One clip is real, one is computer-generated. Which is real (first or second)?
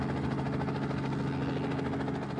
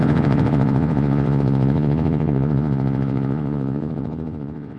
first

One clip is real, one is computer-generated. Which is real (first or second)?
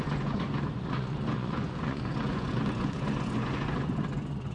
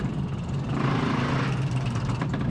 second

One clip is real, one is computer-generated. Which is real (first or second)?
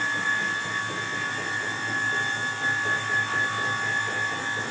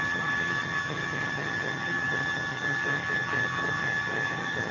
first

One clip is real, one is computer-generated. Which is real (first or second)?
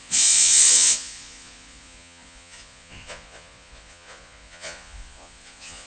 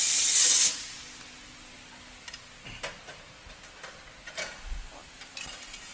second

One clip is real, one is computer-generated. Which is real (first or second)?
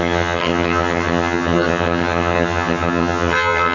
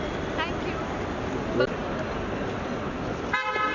second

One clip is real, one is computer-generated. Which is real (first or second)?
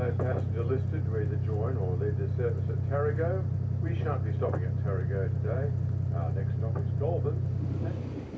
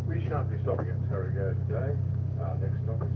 first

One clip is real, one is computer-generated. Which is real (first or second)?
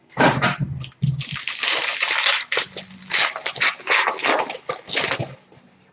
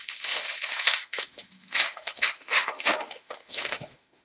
first